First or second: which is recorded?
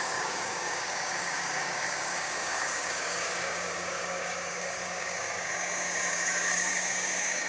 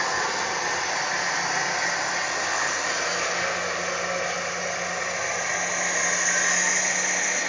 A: second